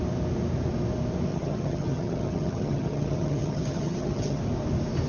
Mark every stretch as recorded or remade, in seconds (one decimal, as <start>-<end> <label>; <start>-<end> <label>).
0.0-1.3 recorded; 1.3-4.4 remade; 4.4-5.1 recorded